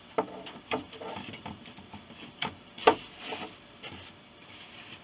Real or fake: real